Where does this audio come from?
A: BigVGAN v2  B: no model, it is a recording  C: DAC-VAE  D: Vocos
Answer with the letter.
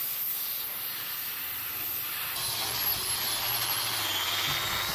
B